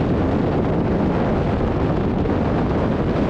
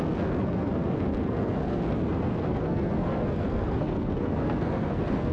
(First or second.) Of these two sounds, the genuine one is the first